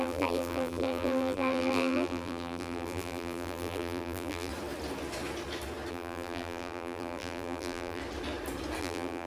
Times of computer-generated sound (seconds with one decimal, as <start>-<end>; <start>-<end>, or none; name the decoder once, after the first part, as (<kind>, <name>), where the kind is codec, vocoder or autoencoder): 0.0-4.5 (vocoder, BigVGAN v2); 5.9-8.0; 8.8-9.3